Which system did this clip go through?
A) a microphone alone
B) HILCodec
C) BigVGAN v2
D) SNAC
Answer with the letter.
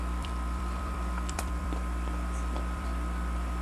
C